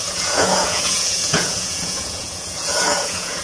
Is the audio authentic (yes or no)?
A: no